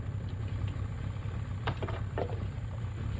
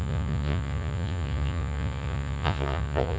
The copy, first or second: second